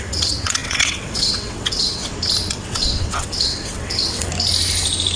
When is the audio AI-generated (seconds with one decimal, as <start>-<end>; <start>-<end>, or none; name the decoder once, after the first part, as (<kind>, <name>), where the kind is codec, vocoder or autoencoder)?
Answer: 0.0-2.0 (vocoder, WaveNeXt); 2.5-4.3